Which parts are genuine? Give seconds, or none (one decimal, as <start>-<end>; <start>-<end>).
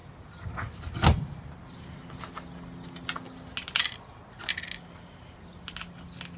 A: 0.0-6.4